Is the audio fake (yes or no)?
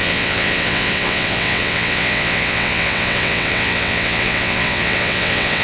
yes